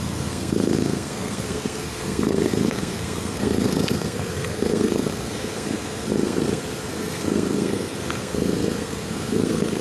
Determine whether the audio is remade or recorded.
remade